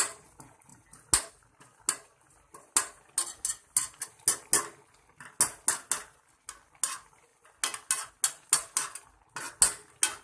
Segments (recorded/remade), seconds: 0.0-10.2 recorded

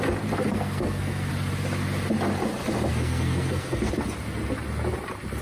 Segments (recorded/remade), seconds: 0.0-0.5 recorded; 0.5-1.3 remade; 1.3-2.9 recorded; 2.9-3.9 remade; 3.9-5.4 recorded